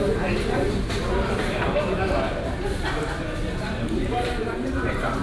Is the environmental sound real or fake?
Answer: fake